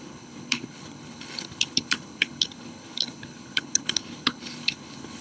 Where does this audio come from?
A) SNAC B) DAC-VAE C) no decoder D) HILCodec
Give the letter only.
D